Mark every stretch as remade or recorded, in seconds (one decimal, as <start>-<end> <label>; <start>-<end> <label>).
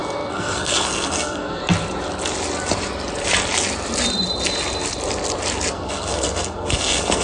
0.0-1.6 remade; 1.6-5.7 recorded; 5.7-7.2 remade